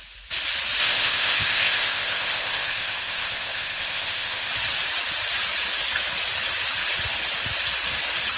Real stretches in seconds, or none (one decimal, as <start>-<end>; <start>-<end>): 0.0-0.8; 4.5-8.4